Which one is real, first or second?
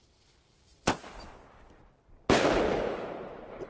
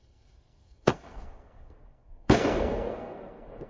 first